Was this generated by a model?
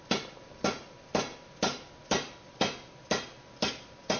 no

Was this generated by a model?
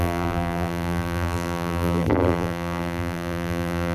yes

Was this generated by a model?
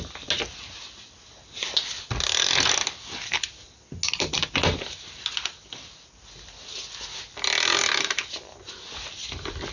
no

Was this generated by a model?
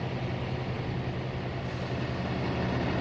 no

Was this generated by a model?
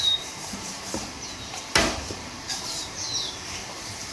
yes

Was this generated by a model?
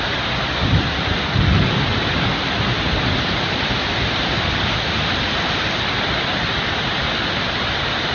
yes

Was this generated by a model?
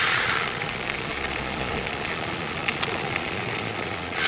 yes